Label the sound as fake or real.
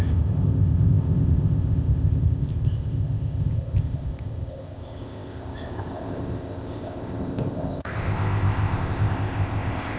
fake